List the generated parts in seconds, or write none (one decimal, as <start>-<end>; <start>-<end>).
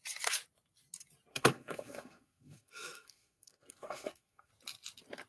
1.3-4.5